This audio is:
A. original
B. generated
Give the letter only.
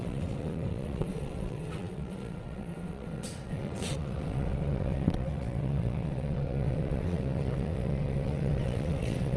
B